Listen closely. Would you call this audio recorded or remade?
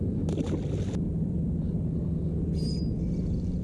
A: recorded